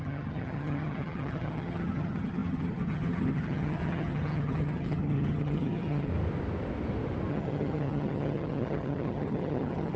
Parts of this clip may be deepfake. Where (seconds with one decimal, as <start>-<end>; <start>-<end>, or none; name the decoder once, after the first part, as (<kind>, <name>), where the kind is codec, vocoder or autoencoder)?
0.0-6.1 (vocoder, HiFi-GAN); 7.3-10.0